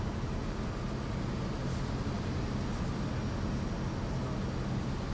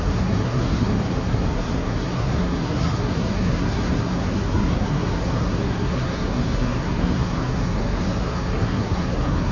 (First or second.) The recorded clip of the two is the first